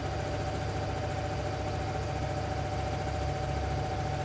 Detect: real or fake real